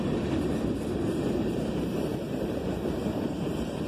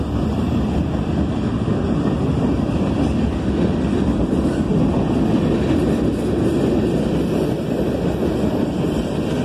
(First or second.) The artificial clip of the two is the first